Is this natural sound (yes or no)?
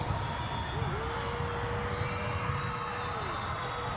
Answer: yes